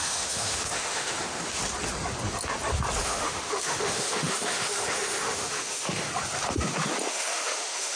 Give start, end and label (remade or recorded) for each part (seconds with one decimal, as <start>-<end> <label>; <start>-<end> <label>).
0.0-1.6 remade; 1.6-3.0 recorded; 3.0-6.1 remade; 6.1-7.1 recorded; 7.1-8.0 remade